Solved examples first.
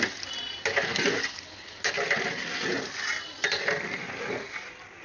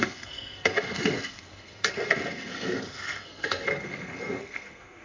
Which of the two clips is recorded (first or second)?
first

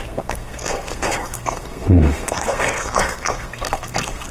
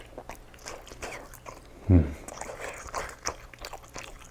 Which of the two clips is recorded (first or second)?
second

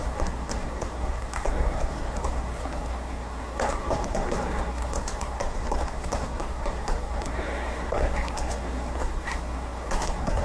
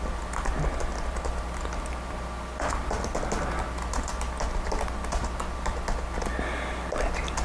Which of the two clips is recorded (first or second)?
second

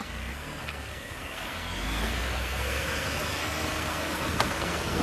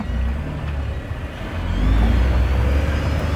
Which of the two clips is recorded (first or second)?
second